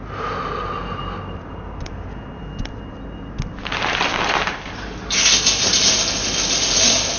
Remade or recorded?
recorded